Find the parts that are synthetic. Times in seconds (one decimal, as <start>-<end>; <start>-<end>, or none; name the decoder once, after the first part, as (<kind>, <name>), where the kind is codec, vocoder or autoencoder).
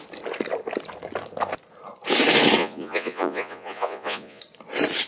2.6-4.4 (vocoder, Vocos)